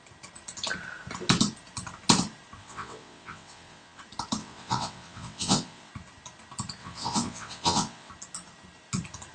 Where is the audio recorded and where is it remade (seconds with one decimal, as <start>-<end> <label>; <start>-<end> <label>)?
0.0-2.6 recorded; 2.6-4.0 remade; 4.0-4.4 recorded; 4.4-5.9 remade; 5.9-6.8 recorded; 6.8-8.1 remade; 8.1-9.3 recorded